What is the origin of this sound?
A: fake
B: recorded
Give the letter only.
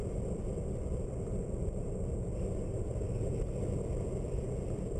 B